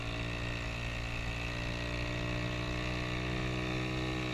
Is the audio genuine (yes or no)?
yes